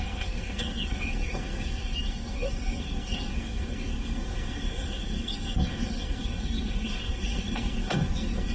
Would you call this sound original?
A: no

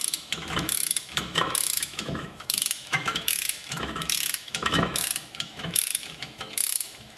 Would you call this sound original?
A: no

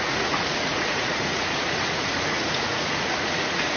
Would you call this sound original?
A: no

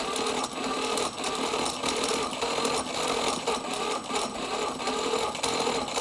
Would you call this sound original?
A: yes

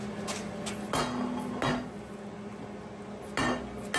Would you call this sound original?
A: yes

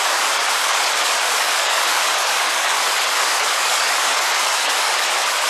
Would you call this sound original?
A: no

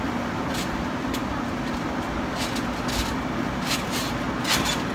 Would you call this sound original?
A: yes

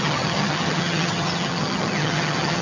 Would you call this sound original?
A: no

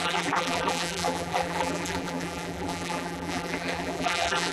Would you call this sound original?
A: no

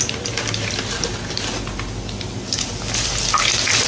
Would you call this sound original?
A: yes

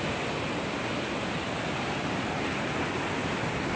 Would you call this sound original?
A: yes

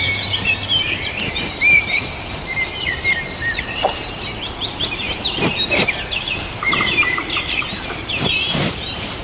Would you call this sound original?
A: no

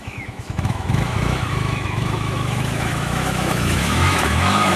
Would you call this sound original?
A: no